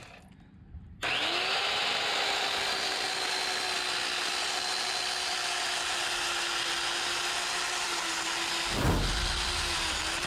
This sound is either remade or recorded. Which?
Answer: recorded